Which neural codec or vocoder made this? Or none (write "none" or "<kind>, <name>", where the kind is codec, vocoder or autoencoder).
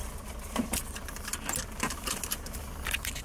vocoder, BigVGAN v2